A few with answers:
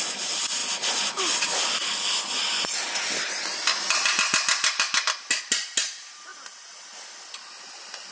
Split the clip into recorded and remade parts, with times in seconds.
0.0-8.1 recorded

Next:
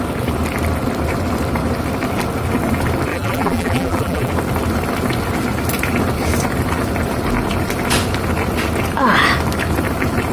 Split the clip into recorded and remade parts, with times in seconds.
0.0-3.1 recorded; 3.1-4.3 remade; 4.3-10.3 recorded

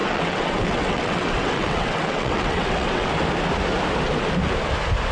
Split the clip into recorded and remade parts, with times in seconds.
0.0-3.1 remade; 3.1-5.1 recorded

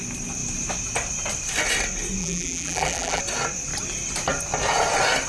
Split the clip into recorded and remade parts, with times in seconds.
0.0-2.2 recorded; 2.2-3.2 remade; 3.2-5.3 recorded

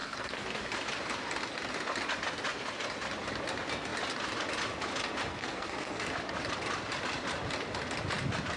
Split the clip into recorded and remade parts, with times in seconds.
0.0-0.6 remade; 0.6-5.3 recorded; 5.3-6.1 remade; 6.1-8.6 recorded

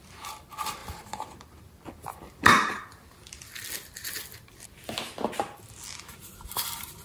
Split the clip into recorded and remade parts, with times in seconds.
0.0-7.0 recorded